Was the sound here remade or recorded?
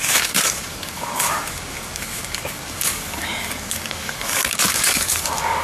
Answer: remade